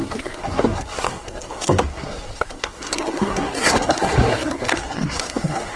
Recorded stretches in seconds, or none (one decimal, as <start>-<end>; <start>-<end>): none